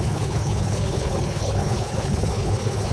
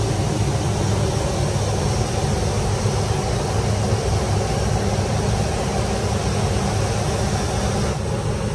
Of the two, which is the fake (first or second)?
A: first